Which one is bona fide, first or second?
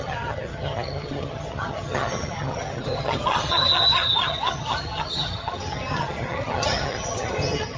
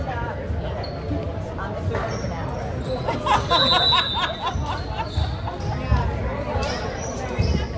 second